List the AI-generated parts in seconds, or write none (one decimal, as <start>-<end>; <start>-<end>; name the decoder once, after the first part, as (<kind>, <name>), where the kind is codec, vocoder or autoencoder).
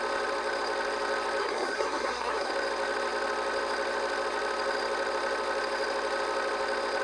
1.4-2.5 (codec, SNAC)